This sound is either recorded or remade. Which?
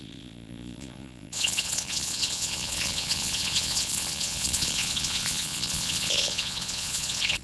remade